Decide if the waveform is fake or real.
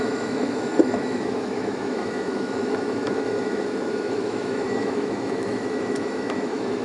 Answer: fake